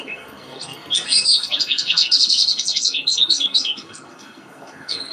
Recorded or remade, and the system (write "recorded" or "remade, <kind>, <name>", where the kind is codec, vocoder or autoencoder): remade, codec, SNAC